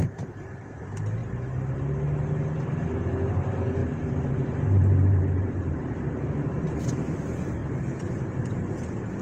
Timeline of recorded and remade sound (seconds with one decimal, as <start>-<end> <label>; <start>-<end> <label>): 0.0-1.2 remade; 1.2-3.3 recorded; 3.3-7.6 remade; 7.6-9.2 recorded